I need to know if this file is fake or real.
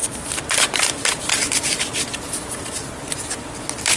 fake